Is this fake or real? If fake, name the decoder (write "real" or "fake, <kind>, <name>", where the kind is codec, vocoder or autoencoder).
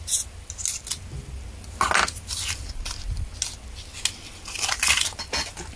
real